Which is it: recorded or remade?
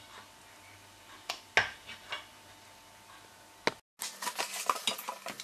recorded